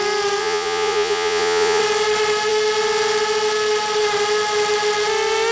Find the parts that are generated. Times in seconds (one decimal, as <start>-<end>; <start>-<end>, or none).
0.4-1.8